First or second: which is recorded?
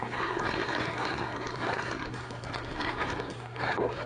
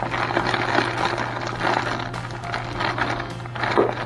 second